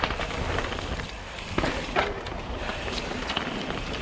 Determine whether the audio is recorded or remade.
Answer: recorded